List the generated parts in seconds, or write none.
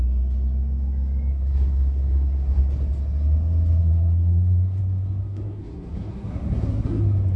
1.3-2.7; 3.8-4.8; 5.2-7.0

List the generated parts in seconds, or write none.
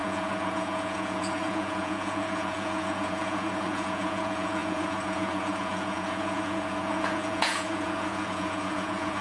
0.0-9.2